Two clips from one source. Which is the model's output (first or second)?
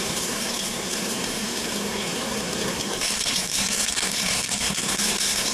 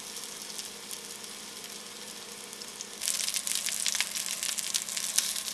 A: first